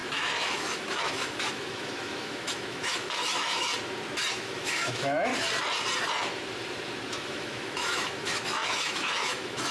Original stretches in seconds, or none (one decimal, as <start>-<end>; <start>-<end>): 3.7-4.3; 5.3-7.1